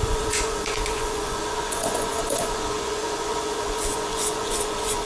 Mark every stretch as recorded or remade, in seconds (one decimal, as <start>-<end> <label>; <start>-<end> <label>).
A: 0.0-5.1 remade